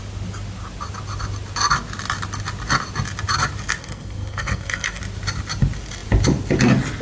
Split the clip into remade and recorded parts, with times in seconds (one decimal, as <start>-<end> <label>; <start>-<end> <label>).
0.0-3.8 recorded; 3.8-5.0 remade; 5.0-7.0 recorded